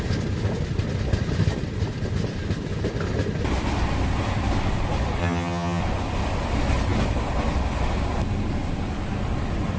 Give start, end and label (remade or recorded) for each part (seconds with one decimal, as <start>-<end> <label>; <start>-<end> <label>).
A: 0.0-5.2 recorded; 5.2-5.8 remade; 5.8-9.8 recorded